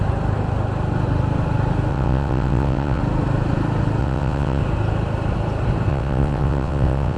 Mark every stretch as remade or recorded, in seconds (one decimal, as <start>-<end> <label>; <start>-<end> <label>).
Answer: 0.0-1.9 recorded; 1.9-3.0 remade; 3.0-4.0 recorded; 4.0-4.6 remade; 4.6-5.9 recorded; 5.9-7.2 remade